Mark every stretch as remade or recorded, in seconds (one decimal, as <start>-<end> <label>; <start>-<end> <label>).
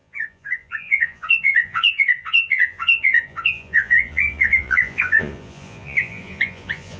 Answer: 0.0-7.0 remade